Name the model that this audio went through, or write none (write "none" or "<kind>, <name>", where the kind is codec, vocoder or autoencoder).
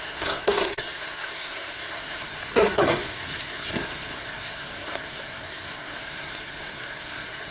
codec, SNAC